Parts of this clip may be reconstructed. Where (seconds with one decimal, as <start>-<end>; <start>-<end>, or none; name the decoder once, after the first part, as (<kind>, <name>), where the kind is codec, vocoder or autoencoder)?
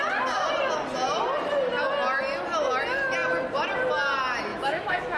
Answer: 4.5-5.2 (autoencoder, DAC-VAE)